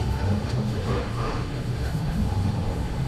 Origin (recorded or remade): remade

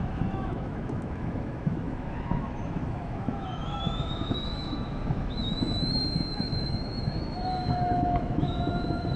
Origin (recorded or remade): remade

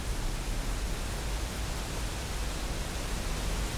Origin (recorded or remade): recorded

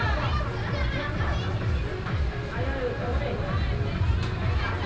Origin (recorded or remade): recorded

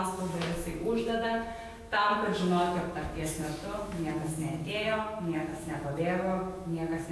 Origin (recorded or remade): remade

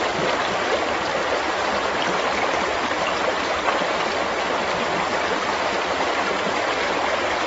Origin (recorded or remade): recorded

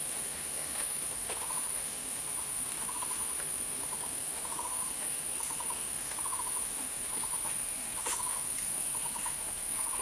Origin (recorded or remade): remade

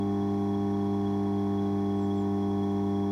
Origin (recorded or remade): recorded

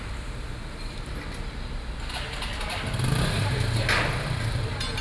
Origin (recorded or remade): recorded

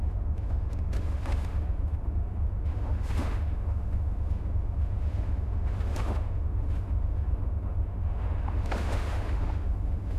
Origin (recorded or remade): remade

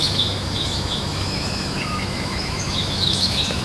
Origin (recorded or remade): remade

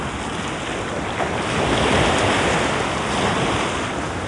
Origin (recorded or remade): recorded